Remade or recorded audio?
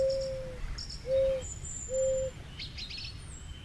recorded